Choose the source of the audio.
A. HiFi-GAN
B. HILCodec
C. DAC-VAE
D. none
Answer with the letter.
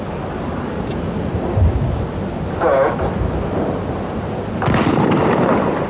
D